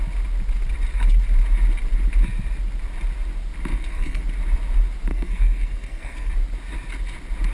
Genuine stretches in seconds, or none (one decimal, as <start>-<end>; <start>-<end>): 0.0-3.7; 4.2-5.1; 6.3-7.5